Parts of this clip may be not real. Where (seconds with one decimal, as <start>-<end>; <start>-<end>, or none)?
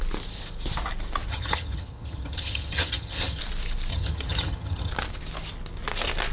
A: 1.3-3.4; 3.9-4.9